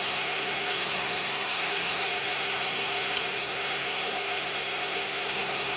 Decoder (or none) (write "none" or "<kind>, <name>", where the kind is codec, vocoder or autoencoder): codec, SNAC